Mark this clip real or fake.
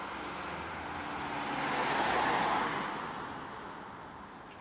real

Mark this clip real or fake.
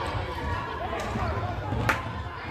real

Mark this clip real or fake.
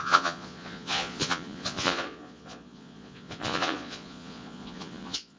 fake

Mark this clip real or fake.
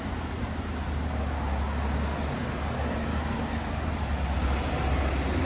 real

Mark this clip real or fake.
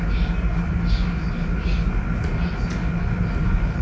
real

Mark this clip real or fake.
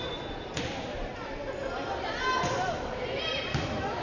real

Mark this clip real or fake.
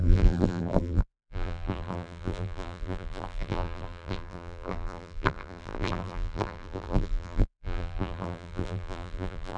fake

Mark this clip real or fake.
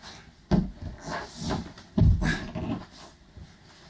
real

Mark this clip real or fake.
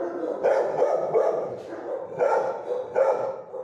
real